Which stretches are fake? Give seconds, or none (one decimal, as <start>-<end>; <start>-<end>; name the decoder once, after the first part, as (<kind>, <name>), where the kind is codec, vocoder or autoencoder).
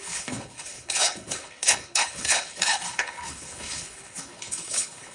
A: 0.0-5.1 (codec, HILCodec)